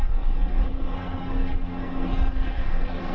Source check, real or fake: fake